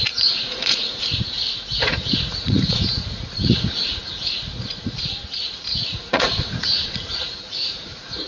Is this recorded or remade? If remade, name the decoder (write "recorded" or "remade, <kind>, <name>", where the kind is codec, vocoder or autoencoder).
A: remade, vocoder, Vocos